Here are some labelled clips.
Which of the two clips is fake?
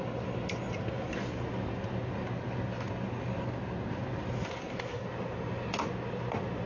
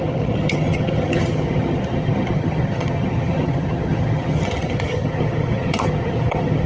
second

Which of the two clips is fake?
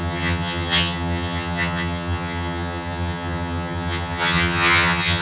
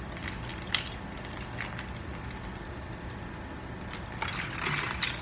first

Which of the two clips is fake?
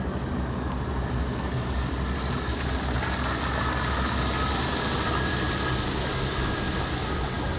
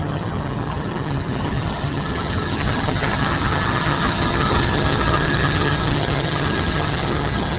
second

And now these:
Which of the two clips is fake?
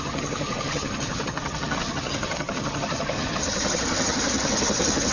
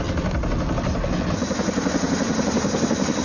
first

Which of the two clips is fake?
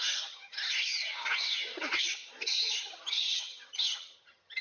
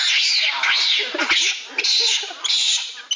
first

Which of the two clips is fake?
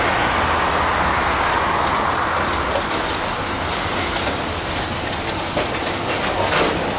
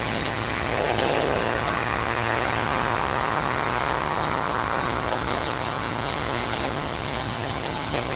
second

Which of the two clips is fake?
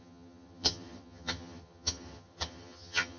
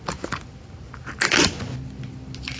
first